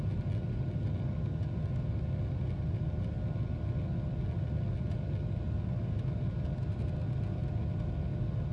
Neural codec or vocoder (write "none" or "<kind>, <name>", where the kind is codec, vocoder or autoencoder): none